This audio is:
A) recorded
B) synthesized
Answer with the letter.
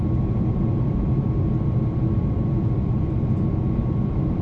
B